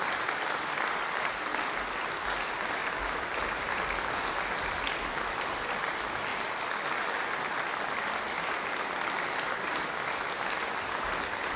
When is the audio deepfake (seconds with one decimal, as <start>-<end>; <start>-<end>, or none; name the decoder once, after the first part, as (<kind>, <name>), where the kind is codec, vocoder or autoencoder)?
none